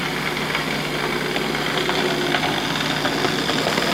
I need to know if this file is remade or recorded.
recorded